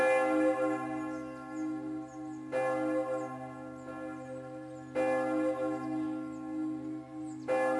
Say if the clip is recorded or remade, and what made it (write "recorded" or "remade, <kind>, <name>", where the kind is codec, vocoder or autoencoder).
recorded